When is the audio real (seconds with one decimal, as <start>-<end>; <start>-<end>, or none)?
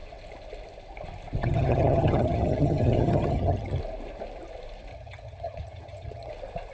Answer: 0.0-1.4; 3.8-4.9; 6.3-6.7